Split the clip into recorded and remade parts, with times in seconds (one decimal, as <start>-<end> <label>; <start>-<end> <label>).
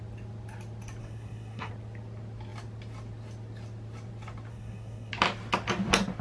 0.0-1.0 recorded; 1.0-1.7 remade; 1.7-4.5 recorded; 4.5-5.1 remade; 5.1-6.2 recorded